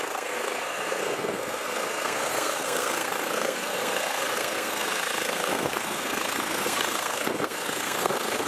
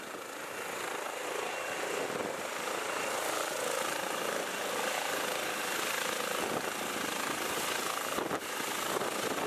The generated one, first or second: first